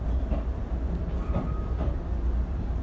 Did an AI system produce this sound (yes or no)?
yes